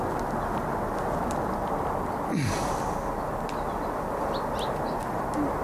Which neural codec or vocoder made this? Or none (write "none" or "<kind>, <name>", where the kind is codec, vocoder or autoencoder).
none